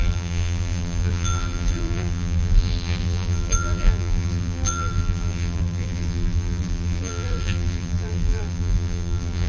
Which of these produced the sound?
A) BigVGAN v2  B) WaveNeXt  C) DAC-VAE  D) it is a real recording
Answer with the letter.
A